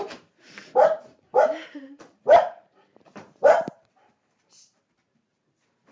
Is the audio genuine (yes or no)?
no